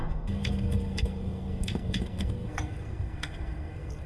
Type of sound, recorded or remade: remade